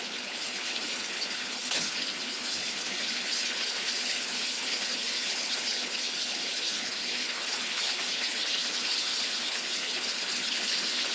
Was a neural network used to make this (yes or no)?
yes